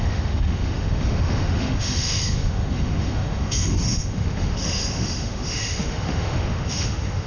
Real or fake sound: fake